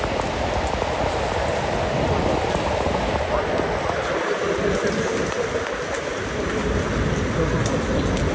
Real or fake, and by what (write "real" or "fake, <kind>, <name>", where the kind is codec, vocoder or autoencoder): real